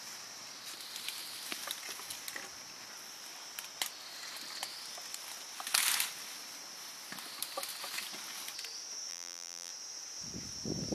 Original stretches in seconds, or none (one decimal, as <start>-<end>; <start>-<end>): 0.0-9.1; 9.7-10.9